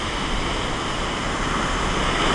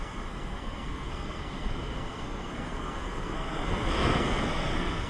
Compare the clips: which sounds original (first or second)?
first